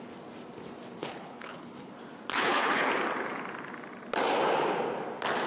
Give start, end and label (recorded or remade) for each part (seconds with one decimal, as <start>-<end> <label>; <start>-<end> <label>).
0.0-1.0 recorded; 1.0-1.9 remade; 1.9-2.3 recorded; 2.3-2.9 remade; 2.9-5.5 recorded